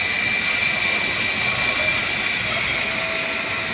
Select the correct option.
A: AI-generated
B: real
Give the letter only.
B